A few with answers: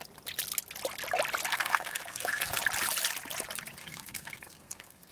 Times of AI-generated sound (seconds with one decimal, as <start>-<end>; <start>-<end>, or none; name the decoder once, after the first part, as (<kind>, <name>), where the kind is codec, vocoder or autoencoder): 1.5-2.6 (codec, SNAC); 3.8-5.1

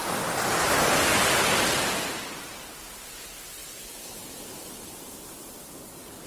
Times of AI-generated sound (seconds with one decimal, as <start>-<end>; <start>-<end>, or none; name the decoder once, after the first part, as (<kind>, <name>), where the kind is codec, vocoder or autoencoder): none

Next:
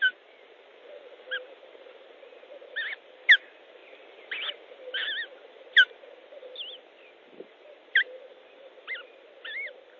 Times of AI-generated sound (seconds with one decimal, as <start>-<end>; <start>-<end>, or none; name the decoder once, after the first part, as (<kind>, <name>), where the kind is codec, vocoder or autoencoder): none